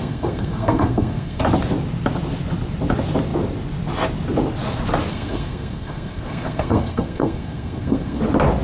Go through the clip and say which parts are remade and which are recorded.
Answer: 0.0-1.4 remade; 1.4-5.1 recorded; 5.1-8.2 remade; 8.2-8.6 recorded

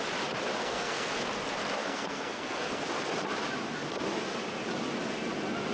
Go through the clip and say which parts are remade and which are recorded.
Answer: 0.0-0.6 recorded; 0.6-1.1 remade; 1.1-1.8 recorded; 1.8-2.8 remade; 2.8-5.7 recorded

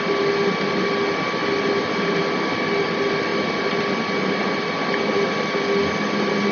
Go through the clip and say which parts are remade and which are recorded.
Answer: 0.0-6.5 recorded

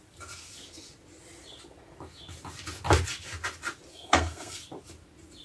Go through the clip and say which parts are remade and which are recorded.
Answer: 0.0-3.9 recorded; 3.9-4.6 remade; 4.6-5.4 recorded

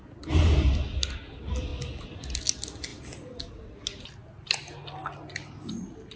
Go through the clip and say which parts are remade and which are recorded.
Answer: 0.0-6.2 recorded

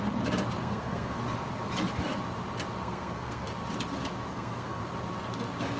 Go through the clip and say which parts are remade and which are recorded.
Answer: 0.0-0.6 recorded; 0.6-1.2 remade; 1.2-2.8 recorded; 2.8-3.5 remade; 3.5-4.3 recorded; 4.3-4.8 remade; 4.8-5.8 recorded

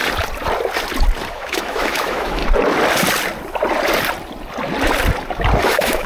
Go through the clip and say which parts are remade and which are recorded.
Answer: 0.0-1.3 recorded; 1.3-2.4 remade; 2.4-5.6 recorded; 5.6-6.1 remade